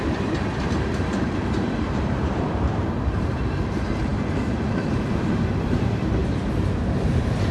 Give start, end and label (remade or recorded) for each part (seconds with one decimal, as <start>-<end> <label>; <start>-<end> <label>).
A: 0.0-6.2 remade; 6.2-7.0 recorded; 7.0-7.5 remade